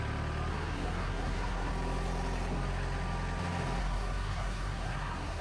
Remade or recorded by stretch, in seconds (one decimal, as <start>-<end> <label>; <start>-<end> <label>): 0.0-0.5 recorded; 0.5-1.7 remade; 1.7-3.8 recorded; 3.8-5.4 remade